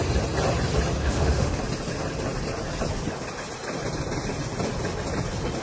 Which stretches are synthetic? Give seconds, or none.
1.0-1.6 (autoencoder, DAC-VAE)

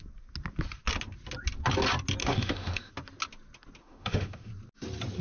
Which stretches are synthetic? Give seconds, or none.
2.2-2.9 (autoencoder, DAC-VAE); 3.8-4.5

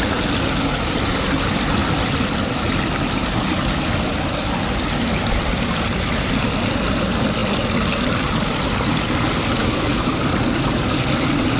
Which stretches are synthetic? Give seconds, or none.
9.6-10.1 (autoencoder, DAC-VAE)

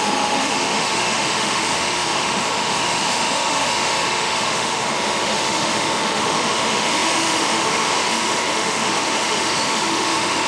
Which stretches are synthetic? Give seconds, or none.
0.0-10.5 (autoencoder, DAC-VAE)

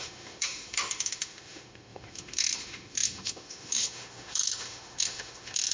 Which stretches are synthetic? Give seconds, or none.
0.0-5.7 (autoencoder, DAC-VAE)

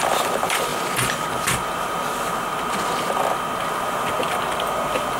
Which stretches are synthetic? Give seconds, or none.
none